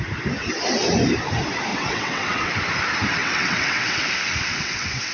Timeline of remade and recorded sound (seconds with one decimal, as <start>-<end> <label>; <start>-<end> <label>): 0.0-1.7 recorded; 1.7-2.5 remade; 2.5-3.2 recorded; 3.2-4.1 remade; 4.1-4.5 recorded; 4.5-5.1 remade